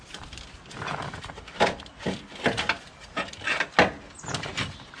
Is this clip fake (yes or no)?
no